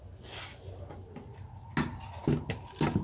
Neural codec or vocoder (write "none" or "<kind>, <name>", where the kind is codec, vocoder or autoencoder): none